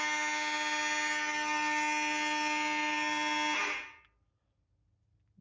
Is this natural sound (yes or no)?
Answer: yes